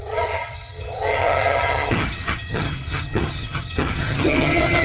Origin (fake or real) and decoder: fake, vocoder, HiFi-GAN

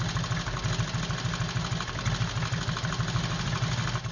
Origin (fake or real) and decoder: real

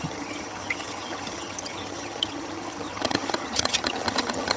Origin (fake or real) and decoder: fake, vocoder, HiFi-GAN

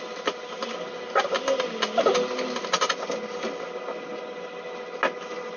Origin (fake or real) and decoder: real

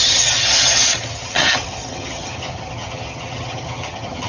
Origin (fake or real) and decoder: fake, vocoder, HiFi-GAN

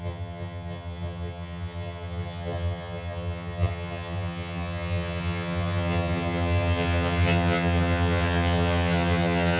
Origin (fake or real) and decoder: fake, vocoder, HiFi-GAN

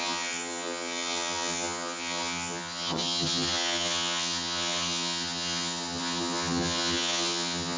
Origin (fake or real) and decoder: fake, vocoder, HiFi-GAN